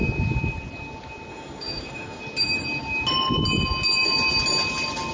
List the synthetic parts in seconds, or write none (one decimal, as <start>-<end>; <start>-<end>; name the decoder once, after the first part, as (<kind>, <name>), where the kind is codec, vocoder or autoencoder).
1.3-2.2 (codec, DAC)